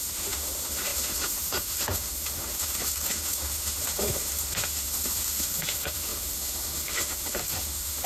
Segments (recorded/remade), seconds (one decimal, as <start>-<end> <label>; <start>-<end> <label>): 0.0-8.1 remade